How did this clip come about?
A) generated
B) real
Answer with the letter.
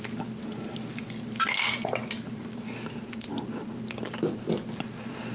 B